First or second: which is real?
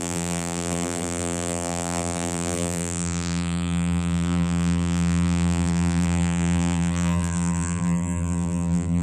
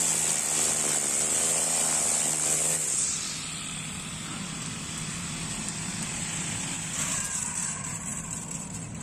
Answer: second